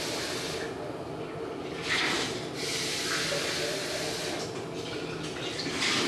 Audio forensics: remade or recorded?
recorded